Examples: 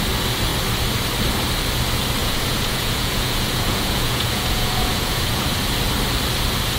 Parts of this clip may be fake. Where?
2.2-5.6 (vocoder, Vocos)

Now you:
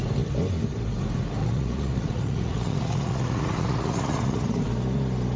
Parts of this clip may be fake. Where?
1.4-4.6 (vocoder, Vocos)

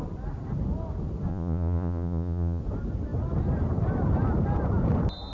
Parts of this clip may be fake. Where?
1.3-2.6 (vocoder, Vocos)